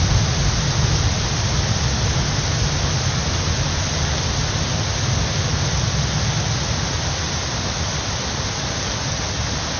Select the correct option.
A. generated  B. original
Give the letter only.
B